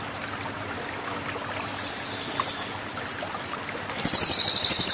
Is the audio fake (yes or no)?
no